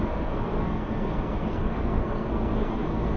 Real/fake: fake